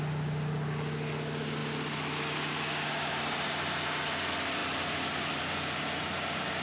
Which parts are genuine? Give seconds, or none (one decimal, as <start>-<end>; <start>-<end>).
0.0-6.6